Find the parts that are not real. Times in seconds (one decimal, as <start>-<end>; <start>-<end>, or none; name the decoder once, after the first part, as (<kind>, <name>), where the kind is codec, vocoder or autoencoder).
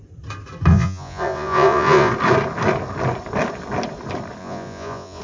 0.7-2.1 (vocoder, Vocos); 4.4-5.2